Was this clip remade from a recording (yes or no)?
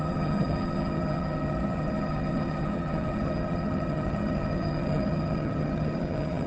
yes